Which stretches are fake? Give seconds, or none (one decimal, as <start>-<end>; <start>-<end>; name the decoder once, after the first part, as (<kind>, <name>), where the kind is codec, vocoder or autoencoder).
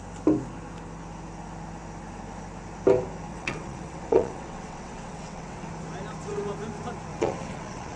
3.3-5.7 (vocoder, WaveNeXt); 7.1-8.0